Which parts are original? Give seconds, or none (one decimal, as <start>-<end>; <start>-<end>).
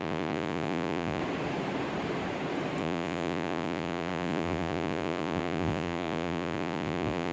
1.2-2.8